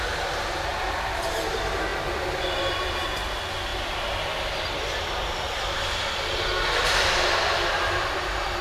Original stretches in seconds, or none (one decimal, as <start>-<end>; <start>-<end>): 0.0-0.7; 1.3-8.6